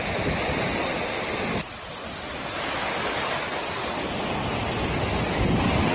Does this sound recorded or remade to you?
recorded